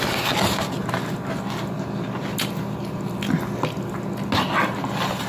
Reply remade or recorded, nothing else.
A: recorded